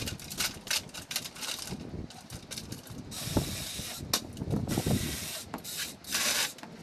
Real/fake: real